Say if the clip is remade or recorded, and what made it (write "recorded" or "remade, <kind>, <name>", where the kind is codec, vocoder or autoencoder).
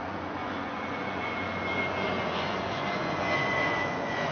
remade, vocoder, Vocos